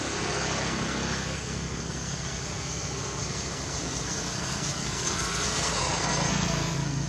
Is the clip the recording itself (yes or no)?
no